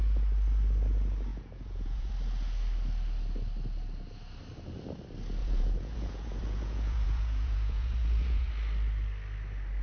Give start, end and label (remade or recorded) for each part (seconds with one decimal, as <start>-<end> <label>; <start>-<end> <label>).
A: 0.0-1.3 recorded; 1.3-2.1 remade; 2.1-5.4 recorded; 5.4-8.5 remade; 8.5-9.8 recorded

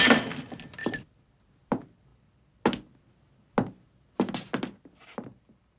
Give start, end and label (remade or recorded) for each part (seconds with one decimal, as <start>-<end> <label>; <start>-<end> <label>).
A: 0.0-5.8 recorded

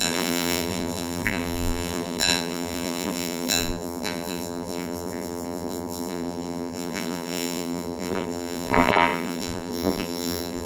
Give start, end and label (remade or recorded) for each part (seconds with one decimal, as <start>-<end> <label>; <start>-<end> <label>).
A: 0.0-10.7 remade

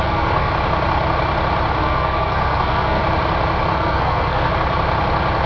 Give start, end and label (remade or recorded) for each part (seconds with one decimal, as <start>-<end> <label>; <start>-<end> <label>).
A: 0.0-0.5 remade; 0.5-1.8 recorded; 1.8-3.0 remade; 3.0-3.7 recorded; 3.7-4.5 remade; 4.5-5.5 recorded